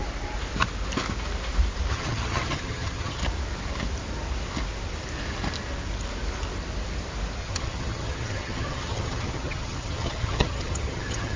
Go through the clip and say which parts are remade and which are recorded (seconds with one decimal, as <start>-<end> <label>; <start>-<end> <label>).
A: 0.0-1.9 recorded; 1.9-3.2 remade; 3.2-7.4 recorded; 7.4-11.4 remade